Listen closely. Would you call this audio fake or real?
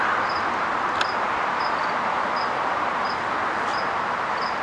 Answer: real